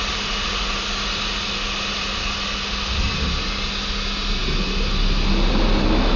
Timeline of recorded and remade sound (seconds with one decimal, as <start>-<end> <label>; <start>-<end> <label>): 0.0-6.2 recorded